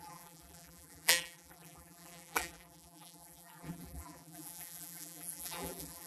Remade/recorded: remade